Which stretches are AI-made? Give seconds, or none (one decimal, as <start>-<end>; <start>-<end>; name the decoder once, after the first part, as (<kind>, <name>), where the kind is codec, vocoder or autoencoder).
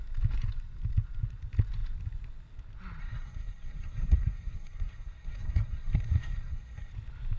3.0-6.9 (codec, SNAC)